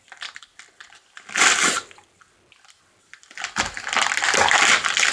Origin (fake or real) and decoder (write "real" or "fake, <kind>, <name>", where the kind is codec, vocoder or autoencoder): real